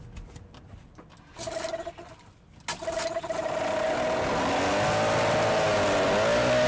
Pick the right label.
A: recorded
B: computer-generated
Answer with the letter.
A